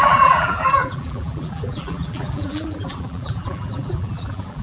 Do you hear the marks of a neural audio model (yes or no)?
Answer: yes